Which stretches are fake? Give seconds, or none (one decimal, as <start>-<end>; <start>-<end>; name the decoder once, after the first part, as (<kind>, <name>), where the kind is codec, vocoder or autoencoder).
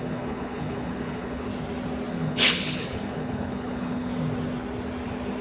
0.0-1.5 (codec, HILCodec); 2.1-4.1